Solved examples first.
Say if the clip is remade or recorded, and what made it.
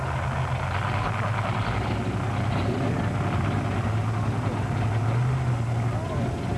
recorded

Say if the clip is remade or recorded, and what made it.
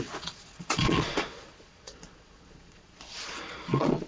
remade, vocoder, Vocos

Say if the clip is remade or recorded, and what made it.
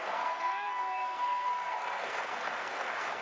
remade, codec, SNAC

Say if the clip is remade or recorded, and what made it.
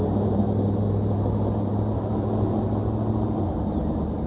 recorded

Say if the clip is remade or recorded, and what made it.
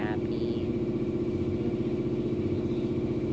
recorded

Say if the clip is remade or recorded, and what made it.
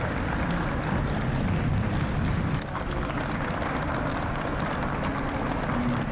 recorded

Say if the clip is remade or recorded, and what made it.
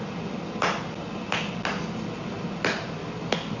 recorded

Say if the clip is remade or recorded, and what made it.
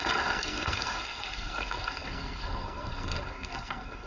remade, codec, SNAC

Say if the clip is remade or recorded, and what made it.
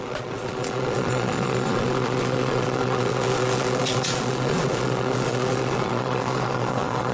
remade, vocoder, Vocos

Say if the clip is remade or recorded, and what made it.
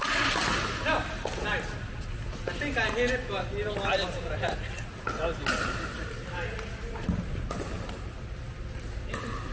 recorded